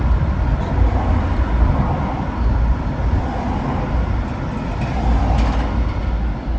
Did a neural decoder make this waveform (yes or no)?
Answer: no